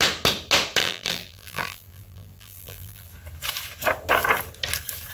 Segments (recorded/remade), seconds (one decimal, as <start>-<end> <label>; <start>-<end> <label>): 0.0-0.8 recorded; 0.8-3.1 remade; 3.1-5.1 recorded